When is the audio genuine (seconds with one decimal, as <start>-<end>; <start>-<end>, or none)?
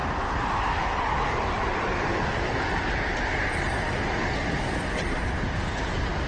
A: 0.0-6.3